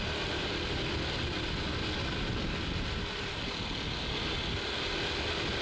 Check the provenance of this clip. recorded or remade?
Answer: recorded